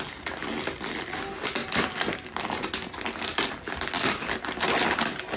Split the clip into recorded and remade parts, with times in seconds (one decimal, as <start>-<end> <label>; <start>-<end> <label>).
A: 0.0-5.4 recorded